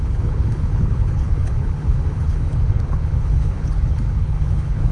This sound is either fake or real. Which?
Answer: fake